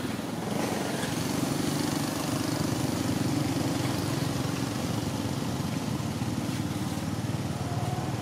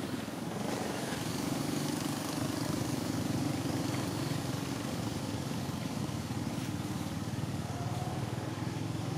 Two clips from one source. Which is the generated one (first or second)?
second